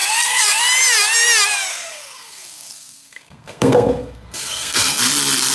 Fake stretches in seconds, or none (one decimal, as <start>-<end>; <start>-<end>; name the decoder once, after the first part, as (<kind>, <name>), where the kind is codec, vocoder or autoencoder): 0.0-0.6 (codec, SNAC); 1.7-5.0